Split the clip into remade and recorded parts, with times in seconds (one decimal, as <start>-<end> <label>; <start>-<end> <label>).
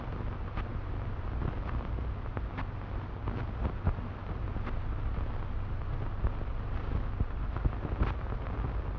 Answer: 0.0-9.0 recorded